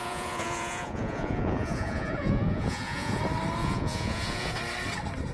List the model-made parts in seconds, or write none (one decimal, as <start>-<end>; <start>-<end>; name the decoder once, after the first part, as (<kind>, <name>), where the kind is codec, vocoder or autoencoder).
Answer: 0.0-3.2 (vocoder, Vocos); 3.6-4.6